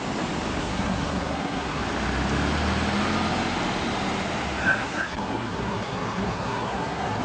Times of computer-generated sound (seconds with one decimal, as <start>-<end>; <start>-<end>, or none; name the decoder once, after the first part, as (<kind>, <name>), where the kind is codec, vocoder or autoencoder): 0.6-1.8 (codec, SNAC); 4.6-7.2

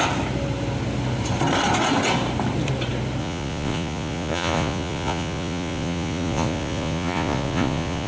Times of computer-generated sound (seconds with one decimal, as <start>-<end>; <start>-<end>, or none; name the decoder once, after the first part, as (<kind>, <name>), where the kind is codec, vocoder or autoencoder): 3.2-8.1 (vocoder, Vocos)

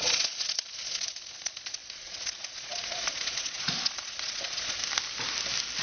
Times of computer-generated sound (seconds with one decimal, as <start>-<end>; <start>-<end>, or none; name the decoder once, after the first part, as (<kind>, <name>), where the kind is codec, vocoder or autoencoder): 0.0-4.8 (vocoder, Vocos)

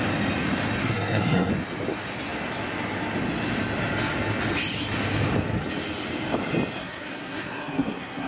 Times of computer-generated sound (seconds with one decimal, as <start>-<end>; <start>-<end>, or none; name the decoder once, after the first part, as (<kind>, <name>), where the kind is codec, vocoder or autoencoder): 0.8-1.5 (codec, SNAC); 6.8-8.3

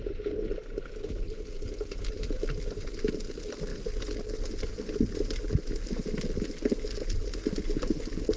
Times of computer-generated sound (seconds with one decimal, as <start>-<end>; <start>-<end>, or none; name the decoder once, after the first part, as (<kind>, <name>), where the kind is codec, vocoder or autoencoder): none

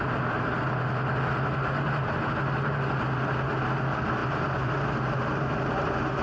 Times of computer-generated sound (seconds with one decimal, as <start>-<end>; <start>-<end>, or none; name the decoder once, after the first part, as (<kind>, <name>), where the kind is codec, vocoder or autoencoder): none